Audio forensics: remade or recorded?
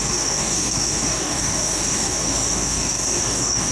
remade